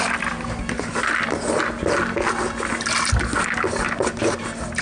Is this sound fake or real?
real